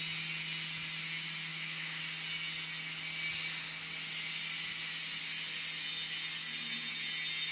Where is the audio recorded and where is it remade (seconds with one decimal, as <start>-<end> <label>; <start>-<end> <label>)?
0.0-1.5 recorded; 1.5-2.0 remade; 2.0-7.5 recorded